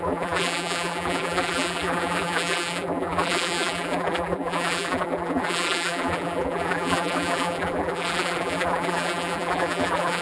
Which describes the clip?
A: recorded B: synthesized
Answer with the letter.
B